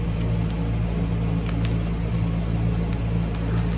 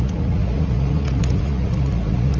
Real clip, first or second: first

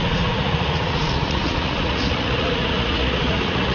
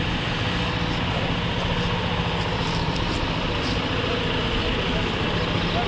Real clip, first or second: second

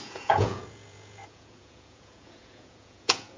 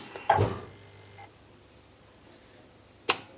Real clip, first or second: second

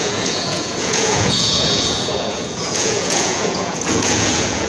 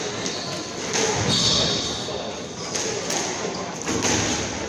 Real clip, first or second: second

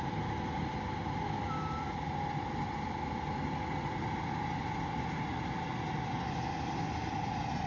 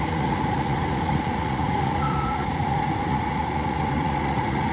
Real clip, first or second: first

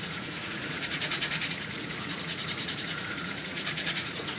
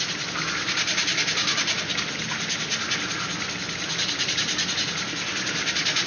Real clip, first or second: second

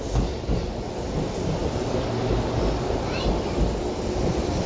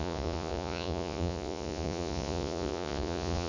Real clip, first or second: first